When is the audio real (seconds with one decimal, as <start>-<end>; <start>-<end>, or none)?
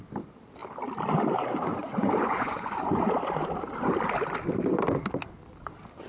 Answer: 0.0-1.7; 3.1-6.1